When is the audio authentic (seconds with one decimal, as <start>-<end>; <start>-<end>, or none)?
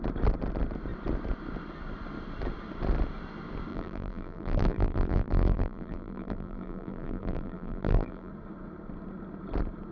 0.0-3.7; 8.3-9.9